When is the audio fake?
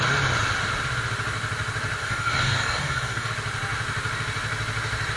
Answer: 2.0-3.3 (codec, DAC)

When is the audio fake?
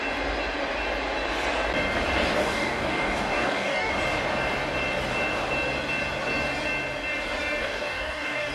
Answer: 2.4-3.9 (codec, DAC); 7.6-8.5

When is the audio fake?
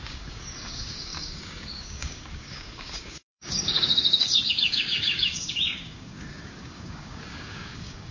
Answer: 0.0-8.1 (codec, DAC)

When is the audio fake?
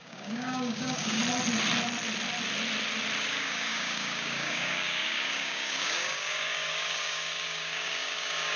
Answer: 0.0-1.2 (codec, DAC); 3.2-8.6